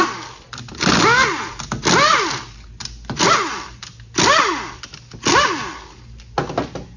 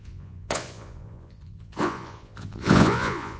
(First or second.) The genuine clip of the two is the first